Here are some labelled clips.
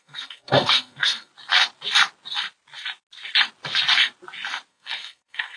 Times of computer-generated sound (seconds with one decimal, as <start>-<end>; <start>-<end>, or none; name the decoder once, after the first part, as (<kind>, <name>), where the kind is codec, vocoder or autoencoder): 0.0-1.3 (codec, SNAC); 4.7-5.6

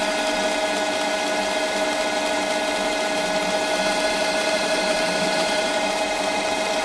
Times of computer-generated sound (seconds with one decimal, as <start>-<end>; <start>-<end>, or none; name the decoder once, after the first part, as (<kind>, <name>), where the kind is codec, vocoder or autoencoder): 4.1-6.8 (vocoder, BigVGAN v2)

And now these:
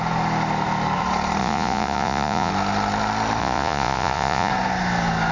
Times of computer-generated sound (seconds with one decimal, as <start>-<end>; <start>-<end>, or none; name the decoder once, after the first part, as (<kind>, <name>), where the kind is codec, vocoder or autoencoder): 1.4-2.5 (vocoder, Vocos); 3.4-4.5